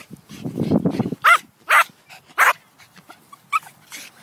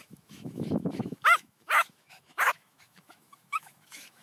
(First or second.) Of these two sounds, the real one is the first